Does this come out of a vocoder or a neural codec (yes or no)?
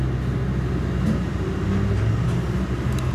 no